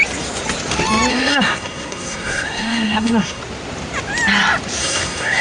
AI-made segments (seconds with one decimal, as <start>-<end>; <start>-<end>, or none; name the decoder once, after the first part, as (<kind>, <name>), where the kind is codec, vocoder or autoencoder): 1.1-3.4 (codec, SNAC); 4.8-5.4

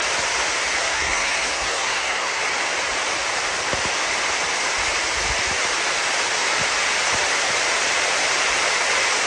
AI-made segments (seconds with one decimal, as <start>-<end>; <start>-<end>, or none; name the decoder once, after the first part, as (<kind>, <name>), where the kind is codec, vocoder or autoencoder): 0.8-2.4 (codec, SNAC)

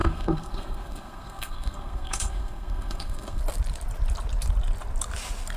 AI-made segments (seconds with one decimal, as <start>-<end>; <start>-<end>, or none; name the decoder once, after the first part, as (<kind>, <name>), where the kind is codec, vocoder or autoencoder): 0.0-3.4 (codec, SNAC)

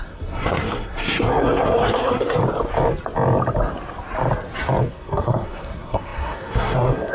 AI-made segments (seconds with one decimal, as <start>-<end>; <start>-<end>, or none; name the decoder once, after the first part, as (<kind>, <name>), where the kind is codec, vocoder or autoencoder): 0.0-2.4 (codec, SNAC); 4.9-7.1